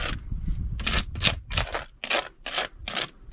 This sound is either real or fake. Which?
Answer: real